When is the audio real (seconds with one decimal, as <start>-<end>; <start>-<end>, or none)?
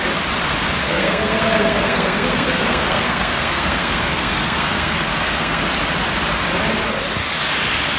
0.0-0.8; 5.6-8.0